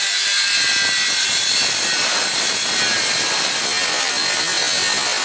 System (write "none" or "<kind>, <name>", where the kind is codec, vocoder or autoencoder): none